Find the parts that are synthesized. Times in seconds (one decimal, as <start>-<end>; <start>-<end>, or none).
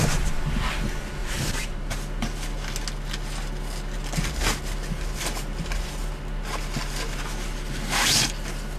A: 1.2-1.9